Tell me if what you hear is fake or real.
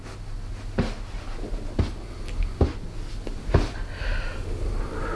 real